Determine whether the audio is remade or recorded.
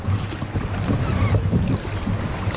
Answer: recorded